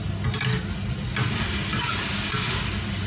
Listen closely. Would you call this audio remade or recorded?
recorded